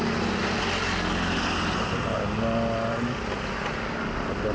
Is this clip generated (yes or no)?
no